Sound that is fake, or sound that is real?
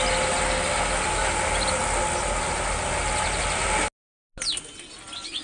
real